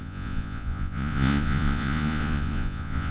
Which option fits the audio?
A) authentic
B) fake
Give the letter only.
B